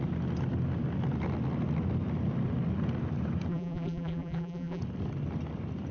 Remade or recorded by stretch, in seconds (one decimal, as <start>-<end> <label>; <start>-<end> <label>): 0.0-3.5 recorded; 3.5-4.8 remade; 4.8-5.9 recorded